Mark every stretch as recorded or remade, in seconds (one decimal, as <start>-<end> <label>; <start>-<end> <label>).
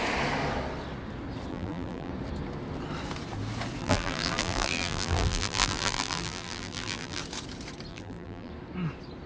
0.0-1.5 recorded; 1.5-2.1 remade; 2.1-3.8 recorded; 3.8-7.2 remade; 7.2-7.9 recorded; 7.9-8.5 remade; 8.5-9.3 recorded